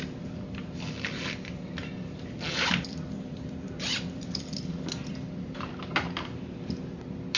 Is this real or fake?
fake